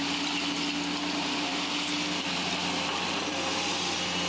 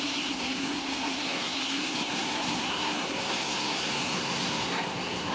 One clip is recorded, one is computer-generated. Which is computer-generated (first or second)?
second